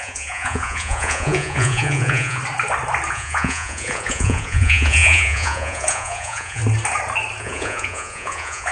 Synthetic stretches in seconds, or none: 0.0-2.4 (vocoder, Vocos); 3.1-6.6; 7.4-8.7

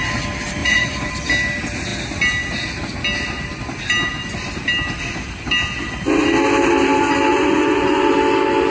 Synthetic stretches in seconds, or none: 0.6-1.1 (vocoder, Vocos); 7.3-8.1

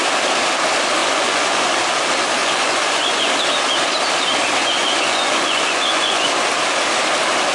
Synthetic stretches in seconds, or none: 1.0-1.8 (vocoder, Vocos); 2.4-3.3; 4.6-6.3

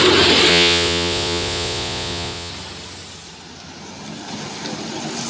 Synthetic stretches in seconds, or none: 0.5-2.5 (vocoder, Vocos)